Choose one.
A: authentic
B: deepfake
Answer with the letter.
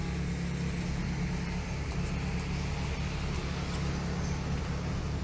A